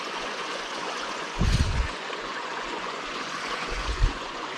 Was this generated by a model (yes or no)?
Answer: yes